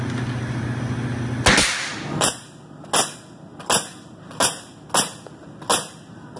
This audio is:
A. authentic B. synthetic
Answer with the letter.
A